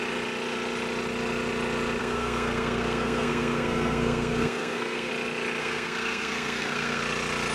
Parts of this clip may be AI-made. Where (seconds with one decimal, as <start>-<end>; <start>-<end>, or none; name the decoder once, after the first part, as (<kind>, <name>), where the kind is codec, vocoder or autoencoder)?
2.0-5.1 (codec, SNAC); 5.6-7.0